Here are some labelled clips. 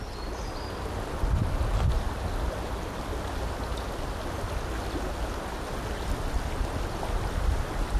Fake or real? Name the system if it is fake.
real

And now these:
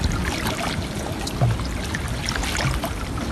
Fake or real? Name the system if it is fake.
real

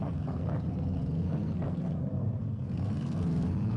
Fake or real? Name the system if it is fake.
fake, codec, SNAC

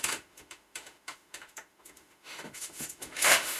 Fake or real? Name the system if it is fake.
fake, autoencoder, DAC-VAE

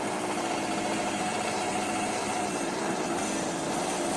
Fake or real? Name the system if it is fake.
real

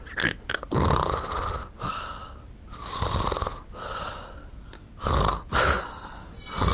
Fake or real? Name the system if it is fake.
real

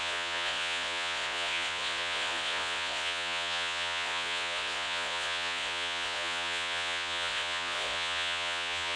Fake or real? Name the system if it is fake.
fake, vocoder, Vocos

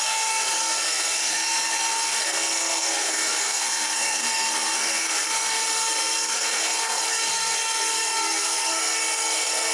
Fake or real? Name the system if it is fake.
fake, codec, SNAC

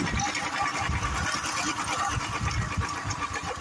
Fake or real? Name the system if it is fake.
real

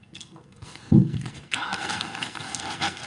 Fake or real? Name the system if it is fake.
fake, codec, SNAC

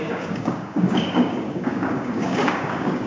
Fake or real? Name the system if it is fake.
fake, codec, DAC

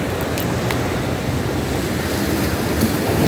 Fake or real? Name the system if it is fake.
real